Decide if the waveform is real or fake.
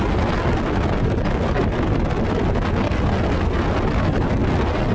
real